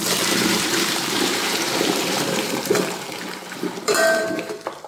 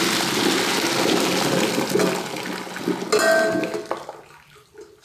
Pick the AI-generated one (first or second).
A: first